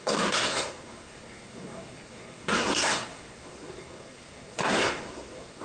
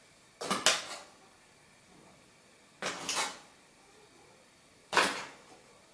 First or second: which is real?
second